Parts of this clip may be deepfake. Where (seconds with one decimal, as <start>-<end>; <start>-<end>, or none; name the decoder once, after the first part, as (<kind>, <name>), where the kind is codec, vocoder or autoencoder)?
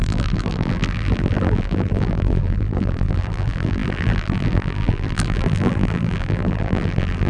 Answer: 0.0-7.3 (vocoder, BigVGAN v2)